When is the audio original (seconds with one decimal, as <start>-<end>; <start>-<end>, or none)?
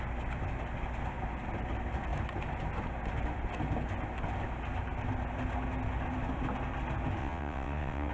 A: 0.0-7.2